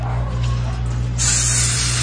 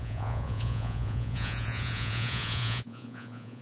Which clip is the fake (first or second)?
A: second